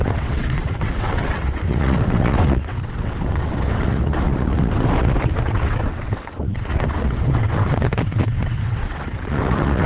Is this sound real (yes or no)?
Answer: no